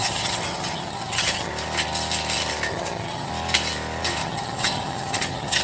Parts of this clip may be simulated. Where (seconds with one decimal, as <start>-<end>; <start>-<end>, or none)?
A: 0.0-1.5; 2.7-3.3; 4.2-5.6